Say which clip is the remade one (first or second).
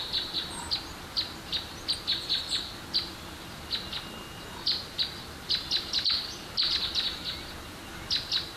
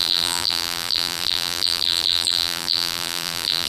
second